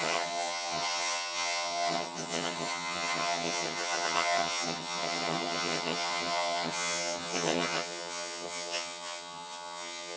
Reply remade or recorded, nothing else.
remade